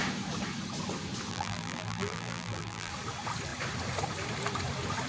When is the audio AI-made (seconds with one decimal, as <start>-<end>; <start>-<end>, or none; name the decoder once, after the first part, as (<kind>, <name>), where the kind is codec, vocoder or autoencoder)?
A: 1.3-2.9 (vocoder, BigVGAN v2)